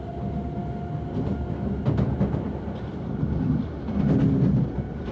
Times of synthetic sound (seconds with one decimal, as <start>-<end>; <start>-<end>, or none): none